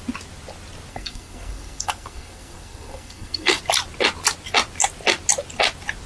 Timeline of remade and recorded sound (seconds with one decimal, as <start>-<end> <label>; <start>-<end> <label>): 0.0-0.9 recorded; 0.9-3.6 remade; 3.6-6.1 recorded